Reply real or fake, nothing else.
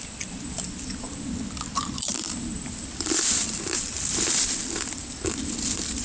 fake